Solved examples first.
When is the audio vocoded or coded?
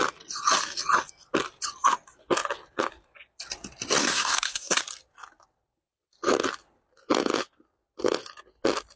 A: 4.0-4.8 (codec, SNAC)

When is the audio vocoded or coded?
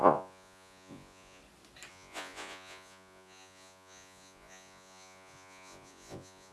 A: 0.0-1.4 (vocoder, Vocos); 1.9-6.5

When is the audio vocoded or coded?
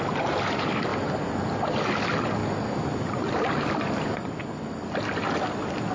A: 2.4-4.4 (vocoder, BigVGAN v2)